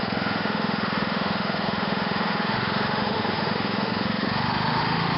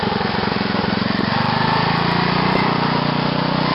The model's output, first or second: first